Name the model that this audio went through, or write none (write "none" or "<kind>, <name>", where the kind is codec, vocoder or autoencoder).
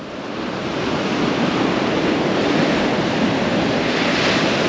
none